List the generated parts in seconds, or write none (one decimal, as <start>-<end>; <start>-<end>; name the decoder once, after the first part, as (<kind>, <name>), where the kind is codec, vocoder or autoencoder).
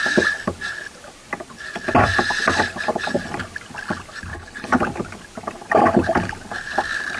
4.3-4.8 (codec, HILCodec)